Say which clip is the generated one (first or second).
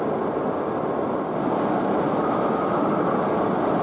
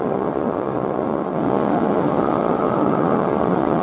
second